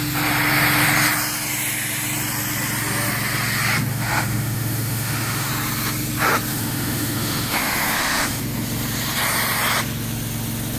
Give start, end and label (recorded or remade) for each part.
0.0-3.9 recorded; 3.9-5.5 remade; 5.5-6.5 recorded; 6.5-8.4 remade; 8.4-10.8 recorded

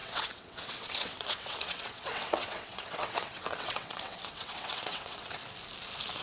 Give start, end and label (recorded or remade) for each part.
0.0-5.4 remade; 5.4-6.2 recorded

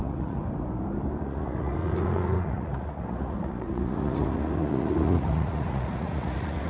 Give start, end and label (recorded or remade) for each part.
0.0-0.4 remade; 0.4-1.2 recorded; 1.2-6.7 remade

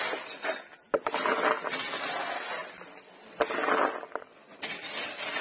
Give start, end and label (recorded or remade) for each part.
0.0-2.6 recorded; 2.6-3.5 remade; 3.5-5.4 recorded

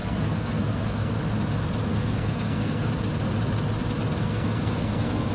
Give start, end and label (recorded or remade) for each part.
0.0-1.1 remade; 1.1-1.9 recorded; 1.9-2.9 remade; 2.9-4.2 recorded; 4.2-5.3 remade

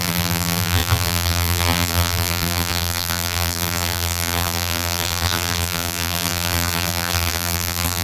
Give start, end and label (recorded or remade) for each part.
0.0-8.0 remade